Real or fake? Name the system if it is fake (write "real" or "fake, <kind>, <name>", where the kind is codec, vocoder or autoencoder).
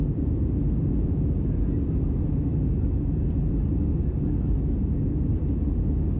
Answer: real